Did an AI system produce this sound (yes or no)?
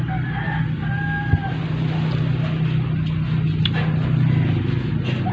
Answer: no